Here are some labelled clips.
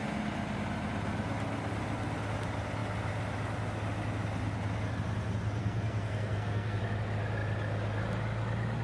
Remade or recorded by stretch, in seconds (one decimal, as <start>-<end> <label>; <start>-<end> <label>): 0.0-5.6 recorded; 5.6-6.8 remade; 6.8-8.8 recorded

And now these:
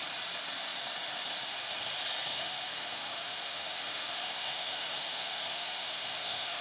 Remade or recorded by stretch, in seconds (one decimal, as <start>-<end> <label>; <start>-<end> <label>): 0.0-2.3 recorded; 2.3-6.6 remade

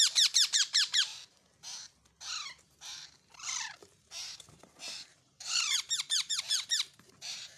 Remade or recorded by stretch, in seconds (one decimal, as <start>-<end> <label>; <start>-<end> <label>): 0.0-1.1 remade; 1.1-2.6 recorded; 2.6-7.6 remade

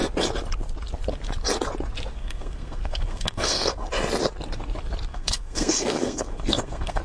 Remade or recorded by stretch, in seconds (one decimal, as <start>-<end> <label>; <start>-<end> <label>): 0.0-2.1 recorded; 2.1-3.7 remade; 3.7-5.1 recorded; 5.1-7.0 remade